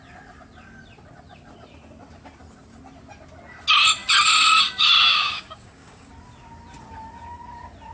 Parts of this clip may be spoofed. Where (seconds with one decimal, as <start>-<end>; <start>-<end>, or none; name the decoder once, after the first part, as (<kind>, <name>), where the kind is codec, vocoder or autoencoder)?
5.1-6.1 (codec, DAC)